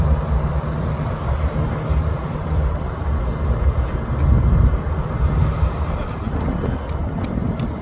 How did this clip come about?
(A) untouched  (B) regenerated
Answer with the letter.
A